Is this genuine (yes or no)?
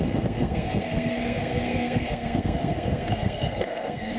no